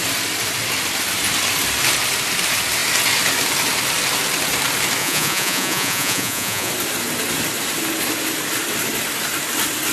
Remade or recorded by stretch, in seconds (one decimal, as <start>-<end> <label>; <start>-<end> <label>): 0.0-5.0 recorded; 5.0-6.7 remade; 6.7-9.9 recorded